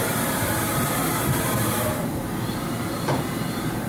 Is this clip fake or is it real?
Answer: fake